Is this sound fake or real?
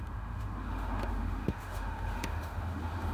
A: fake